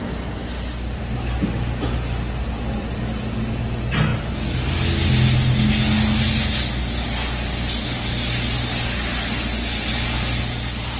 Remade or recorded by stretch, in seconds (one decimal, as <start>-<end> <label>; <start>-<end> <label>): 0.0-11.0 recorded